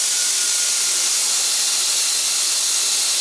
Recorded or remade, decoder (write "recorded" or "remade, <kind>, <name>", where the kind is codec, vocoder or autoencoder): recorded